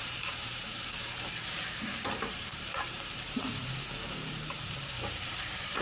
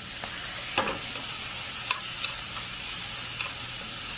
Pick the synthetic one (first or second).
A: first